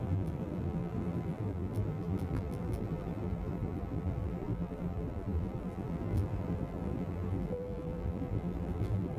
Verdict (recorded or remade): remade